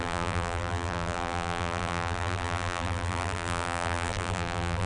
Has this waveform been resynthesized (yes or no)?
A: yes